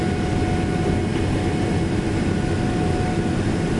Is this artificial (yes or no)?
no